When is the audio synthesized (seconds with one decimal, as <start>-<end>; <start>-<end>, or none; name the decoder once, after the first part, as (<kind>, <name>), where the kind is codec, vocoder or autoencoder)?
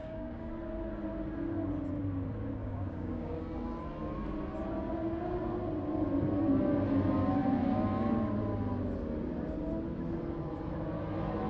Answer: 0.0-0.5 (codec, DAC); 2.6-3.4